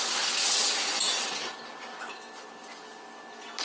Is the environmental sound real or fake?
real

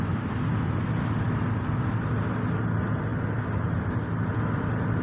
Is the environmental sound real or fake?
real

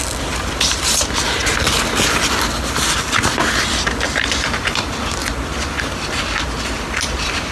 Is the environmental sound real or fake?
real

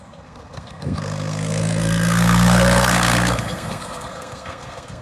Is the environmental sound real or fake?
fake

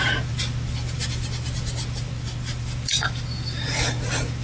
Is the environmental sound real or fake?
real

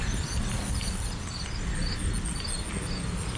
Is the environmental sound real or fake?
real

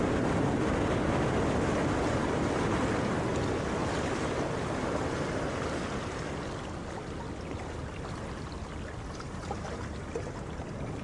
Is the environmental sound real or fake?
real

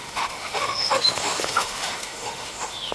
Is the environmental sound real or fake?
fake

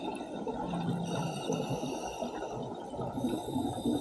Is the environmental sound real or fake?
real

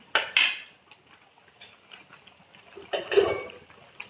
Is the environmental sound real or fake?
real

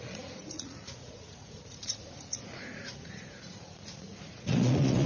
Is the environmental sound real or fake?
fake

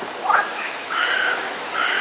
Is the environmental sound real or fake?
fake